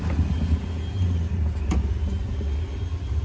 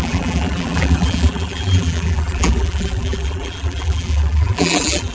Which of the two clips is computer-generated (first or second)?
second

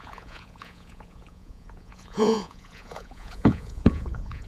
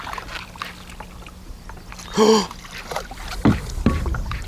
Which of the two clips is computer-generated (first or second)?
first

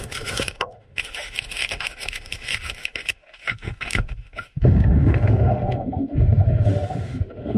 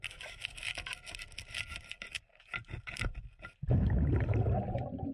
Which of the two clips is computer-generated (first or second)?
first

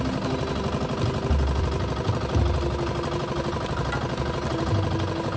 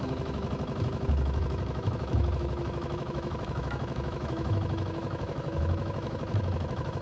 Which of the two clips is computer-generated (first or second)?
second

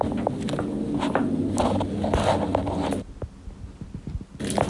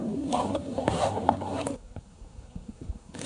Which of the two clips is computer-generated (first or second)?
second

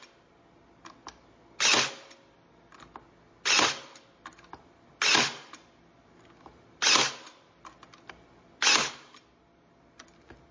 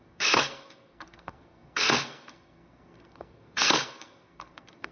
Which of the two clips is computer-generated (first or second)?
second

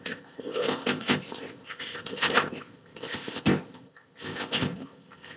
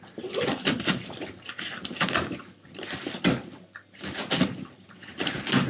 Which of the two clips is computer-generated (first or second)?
first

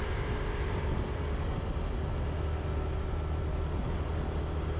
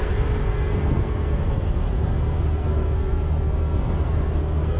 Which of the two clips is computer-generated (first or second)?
second